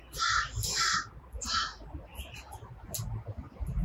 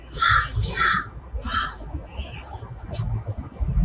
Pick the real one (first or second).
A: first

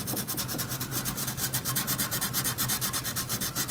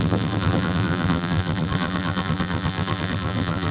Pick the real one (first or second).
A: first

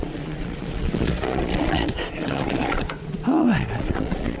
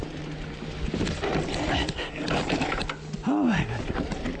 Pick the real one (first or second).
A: second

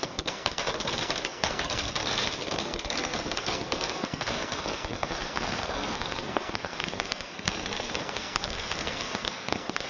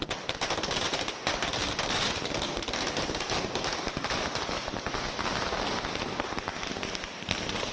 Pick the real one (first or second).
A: second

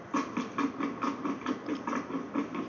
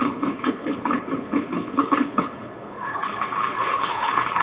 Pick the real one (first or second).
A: first